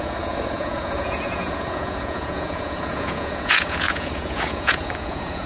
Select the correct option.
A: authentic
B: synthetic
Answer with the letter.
B